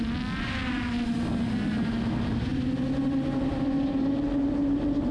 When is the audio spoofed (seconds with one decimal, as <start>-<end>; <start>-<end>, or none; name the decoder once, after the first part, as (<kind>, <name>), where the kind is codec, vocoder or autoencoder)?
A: none